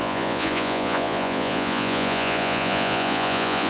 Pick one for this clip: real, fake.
fake